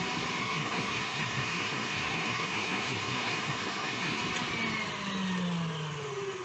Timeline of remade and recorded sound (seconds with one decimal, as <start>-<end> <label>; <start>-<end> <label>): 0.0-0.4 recorded; 0.4-4.2 remade; 4.2-6.4 recorded